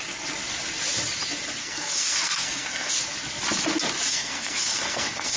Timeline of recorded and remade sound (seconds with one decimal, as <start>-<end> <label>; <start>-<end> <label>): 0.0-1.6 recorded; 1.6-2.9 remade; 2.9-4.1 recorded; 4.1-5.4 remade